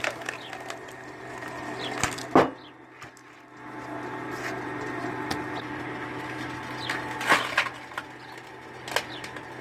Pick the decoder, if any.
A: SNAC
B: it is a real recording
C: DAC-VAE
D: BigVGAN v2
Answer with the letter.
B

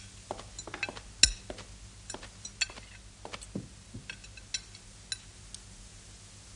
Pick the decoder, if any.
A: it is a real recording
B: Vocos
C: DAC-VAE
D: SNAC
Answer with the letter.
A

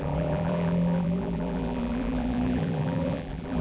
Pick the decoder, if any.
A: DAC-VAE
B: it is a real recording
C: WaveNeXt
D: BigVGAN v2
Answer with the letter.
D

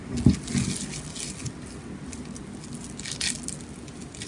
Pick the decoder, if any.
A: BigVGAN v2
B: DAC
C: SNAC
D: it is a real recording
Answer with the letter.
D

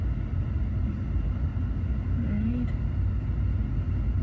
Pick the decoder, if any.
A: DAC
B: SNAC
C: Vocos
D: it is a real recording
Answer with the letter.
D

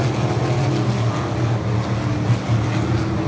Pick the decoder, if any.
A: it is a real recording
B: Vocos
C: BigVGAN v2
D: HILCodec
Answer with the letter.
A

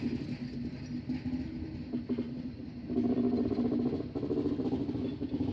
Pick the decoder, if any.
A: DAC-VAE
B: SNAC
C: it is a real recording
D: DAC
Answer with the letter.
C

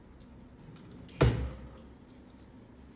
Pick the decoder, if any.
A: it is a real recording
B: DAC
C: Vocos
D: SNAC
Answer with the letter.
A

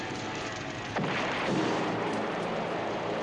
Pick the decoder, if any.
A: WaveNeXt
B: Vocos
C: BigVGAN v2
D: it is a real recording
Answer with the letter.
C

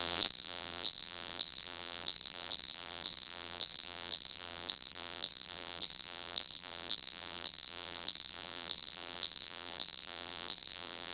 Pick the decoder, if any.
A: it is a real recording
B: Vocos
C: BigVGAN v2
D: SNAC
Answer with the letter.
C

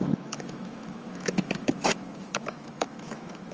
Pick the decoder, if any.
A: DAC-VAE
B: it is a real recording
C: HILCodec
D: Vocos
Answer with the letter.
A